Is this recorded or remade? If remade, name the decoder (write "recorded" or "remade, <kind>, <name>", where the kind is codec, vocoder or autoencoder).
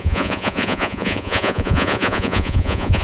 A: remade, vocoder, Vocos